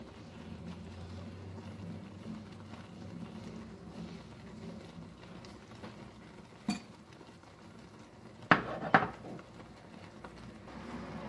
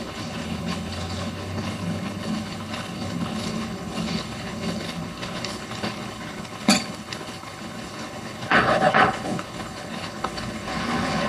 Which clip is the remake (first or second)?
second